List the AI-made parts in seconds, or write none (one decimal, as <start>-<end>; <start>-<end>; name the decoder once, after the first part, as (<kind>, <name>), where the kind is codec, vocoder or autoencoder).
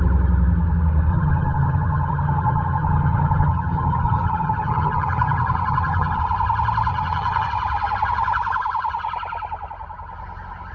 1.1-6.2 (vocoder, HiFi-GAN); 6.9-7.5